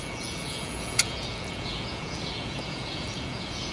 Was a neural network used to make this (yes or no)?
yes